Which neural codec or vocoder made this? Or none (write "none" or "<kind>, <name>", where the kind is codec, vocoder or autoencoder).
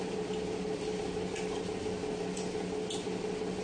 none